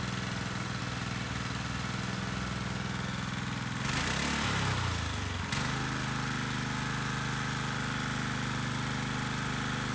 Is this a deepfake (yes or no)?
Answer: no